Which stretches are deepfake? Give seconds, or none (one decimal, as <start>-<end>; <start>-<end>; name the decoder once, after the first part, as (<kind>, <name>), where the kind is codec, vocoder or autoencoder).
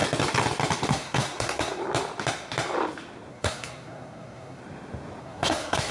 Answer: 0.9-1.8 (codec, SNAC); 3.3-4.6; 5.2-5.9